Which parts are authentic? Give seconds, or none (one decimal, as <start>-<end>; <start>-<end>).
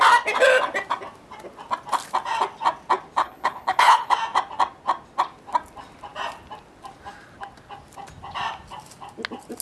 0.0-3.2; 4.1-9.6